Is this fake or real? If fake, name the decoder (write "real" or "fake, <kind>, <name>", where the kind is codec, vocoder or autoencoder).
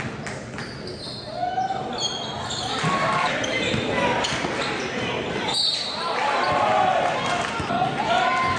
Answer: real